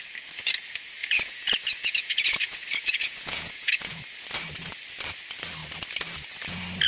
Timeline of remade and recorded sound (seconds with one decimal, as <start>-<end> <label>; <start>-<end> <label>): 0.0-1.0 recorded; 1.0-4.0 remade; 4.0-6.9 recorded